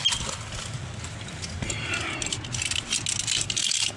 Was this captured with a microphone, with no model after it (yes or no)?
yes